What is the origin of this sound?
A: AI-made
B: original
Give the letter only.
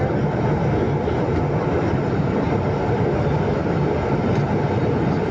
B